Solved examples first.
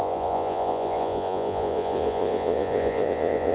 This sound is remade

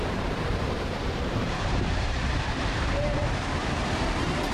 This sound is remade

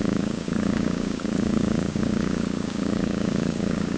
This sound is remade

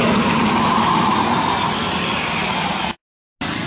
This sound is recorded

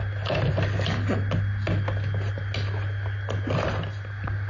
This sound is recorded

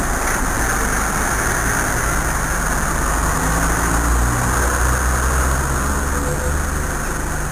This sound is recorded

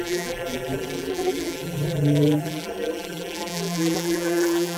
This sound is remade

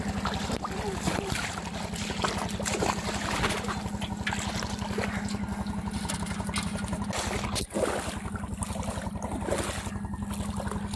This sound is recorded